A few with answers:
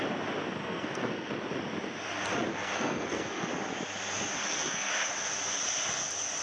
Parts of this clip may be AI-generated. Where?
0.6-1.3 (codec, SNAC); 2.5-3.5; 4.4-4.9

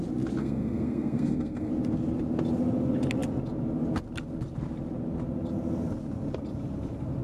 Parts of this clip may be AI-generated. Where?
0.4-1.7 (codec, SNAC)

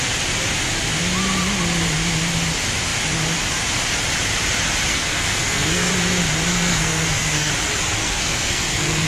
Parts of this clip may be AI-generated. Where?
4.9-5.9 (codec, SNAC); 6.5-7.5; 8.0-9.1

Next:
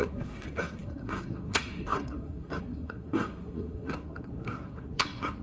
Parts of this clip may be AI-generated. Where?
0.0-5.4 (codec, SNAC)

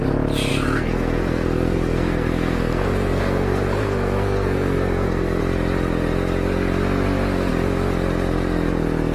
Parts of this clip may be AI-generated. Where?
0.5-5.4 (codec, SNAC)

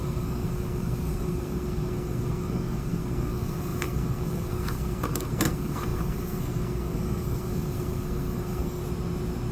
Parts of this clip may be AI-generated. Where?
0.0-8.8 (codec, SNAC)